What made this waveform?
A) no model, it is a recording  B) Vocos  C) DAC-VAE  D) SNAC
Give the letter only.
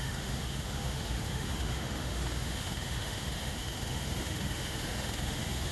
C